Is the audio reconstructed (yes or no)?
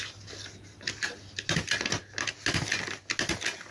no